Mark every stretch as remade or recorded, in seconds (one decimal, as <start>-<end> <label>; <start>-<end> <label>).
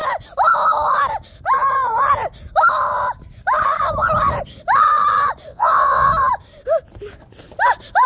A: 0.0-5.5 recorded; 5.5-6.1 remade; 6.1-8.1 recorded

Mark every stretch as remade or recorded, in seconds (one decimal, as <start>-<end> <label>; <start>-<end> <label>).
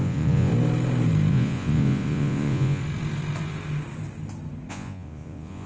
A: 0.0-0.5 remade; 0.5-1.3 recorded; 1.3-2.8 remade; 2.8-4.7 recorded; 4.7-5.7 remade